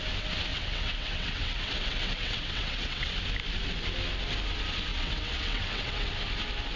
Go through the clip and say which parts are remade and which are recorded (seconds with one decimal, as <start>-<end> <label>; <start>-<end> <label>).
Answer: 0.0-0.5 recorded; 0.5-3.1 remade; 3.1-4.9 recorded; 4.9-6.1 remade; 6.1-6.8 recorded